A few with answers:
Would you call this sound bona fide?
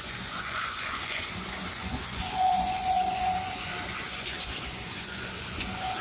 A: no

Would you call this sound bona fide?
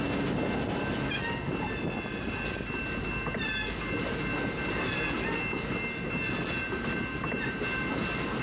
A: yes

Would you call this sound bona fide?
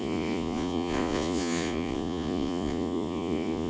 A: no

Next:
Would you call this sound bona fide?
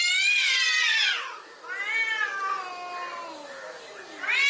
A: yes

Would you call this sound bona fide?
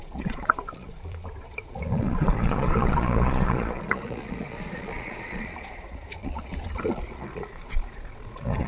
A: no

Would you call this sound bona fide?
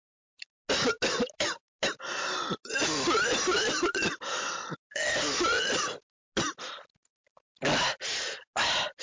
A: yes